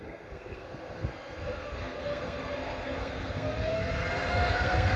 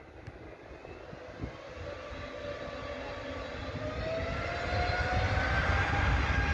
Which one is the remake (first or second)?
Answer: first